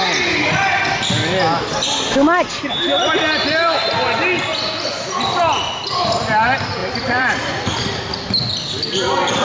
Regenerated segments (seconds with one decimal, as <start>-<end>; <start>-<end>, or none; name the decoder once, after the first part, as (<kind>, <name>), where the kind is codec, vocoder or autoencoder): 6.8-7.7 (vocoder, BigVGAN v2)